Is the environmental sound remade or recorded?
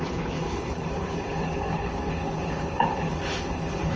remade